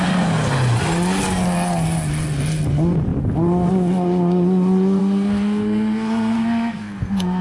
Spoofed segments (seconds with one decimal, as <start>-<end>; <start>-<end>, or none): 5.0-7.4